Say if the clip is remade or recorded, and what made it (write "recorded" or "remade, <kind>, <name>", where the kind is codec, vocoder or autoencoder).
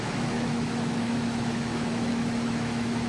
remade, autoencoder, DAC-VAE